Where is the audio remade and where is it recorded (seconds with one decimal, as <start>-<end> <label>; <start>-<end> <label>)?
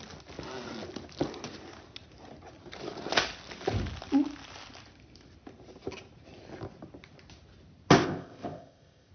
0.0-8.0 recorded; 8.0-9.1 remade